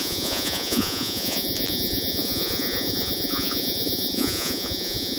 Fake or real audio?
fake